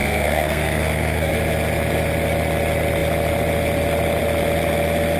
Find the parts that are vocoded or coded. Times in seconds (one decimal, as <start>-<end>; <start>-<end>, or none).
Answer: 0.0-1.3